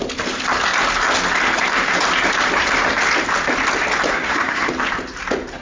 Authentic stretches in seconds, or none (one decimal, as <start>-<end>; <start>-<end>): 0.0-4.1; 4.7-5.6